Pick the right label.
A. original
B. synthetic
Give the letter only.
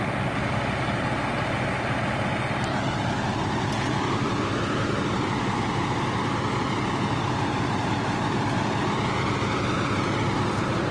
A